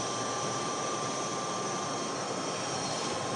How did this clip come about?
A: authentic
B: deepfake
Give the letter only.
B